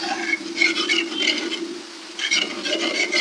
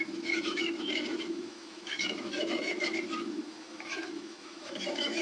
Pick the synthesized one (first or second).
second